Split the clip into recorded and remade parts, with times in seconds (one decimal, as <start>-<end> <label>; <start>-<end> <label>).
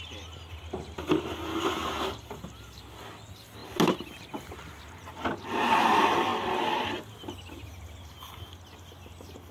0.0-9.5 recorded